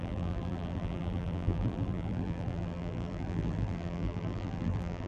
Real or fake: fake